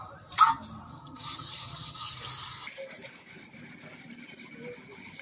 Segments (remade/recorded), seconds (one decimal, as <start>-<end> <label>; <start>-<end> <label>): 0.0-0.9 recorded; 0.9-2.1 remade; 2.1-5.2 recorded